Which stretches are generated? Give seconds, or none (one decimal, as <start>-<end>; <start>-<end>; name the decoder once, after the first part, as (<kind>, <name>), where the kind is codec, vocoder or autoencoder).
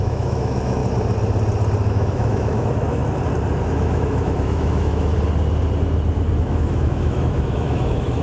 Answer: 0.0-0.8 (autoencoder, DAC-VAE); 1.9-3.0; 3.6-5.1; 6.4-8.2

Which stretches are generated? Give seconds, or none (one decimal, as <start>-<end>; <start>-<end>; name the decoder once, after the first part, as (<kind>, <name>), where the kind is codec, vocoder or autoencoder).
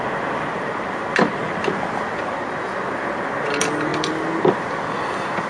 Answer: none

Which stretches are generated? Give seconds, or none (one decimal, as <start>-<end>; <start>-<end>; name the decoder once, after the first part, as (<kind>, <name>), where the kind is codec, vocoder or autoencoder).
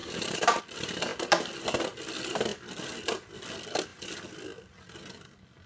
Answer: 0.0-0.6 (vocoder, BigVGAN v2)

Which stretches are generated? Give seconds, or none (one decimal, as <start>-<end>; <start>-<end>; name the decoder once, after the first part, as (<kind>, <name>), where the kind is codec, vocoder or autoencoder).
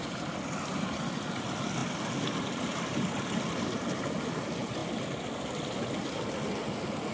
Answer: none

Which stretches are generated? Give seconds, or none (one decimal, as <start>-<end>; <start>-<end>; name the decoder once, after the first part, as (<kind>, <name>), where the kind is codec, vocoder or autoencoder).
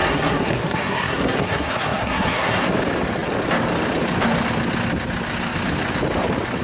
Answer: 0.0-2.7 (codec, SNAC)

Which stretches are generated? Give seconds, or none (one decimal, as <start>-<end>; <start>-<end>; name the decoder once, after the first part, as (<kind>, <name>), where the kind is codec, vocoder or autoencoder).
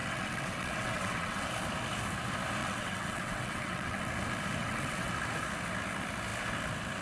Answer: 0.0-1.5 (vocoder, WaveNeXt); 2.6-4.0; 4.6-5.1